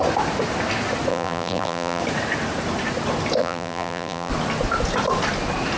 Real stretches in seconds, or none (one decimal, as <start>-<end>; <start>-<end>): 0.0-1.1; 2.0-3.4; 4.3-5.8